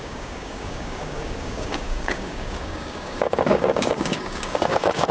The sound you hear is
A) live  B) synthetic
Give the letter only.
B